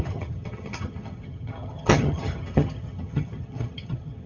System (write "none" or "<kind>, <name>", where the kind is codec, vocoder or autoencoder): vocoder, HiFi-GAN